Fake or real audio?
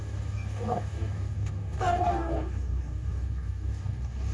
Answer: fake